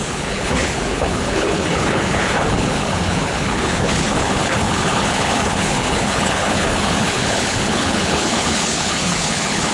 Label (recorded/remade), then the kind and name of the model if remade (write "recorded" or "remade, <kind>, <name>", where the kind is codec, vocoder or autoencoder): remade, codec, HILCodec